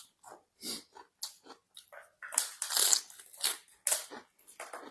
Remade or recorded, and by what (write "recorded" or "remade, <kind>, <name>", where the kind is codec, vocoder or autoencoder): recorded